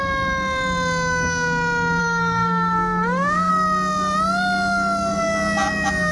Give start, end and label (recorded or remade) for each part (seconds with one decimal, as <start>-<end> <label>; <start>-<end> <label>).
0.0-2.0 recorded; 2.0-3.5 remade; 3.5-6.1 recorded